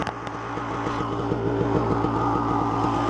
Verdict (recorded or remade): recorded